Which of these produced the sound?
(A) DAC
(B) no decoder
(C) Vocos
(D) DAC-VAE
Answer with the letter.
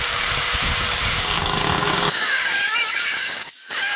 A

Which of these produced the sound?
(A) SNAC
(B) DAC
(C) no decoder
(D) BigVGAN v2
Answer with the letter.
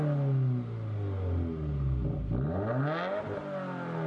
C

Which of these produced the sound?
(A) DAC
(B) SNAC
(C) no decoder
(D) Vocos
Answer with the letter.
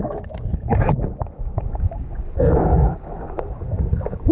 A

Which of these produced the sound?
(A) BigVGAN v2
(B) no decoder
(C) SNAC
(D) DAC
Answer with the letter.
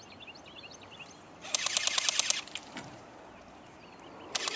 B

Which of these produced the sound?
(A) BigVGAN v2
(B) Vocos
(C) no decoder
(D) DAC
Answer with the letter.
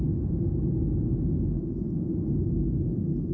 C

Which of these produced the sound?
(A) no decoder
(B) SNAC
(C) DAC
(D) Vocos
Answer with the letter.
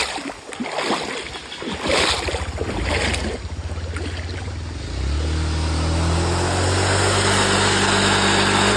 A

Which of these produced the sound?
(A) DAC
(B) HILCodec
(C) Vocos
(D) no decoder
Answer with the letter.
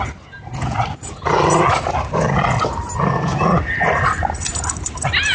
D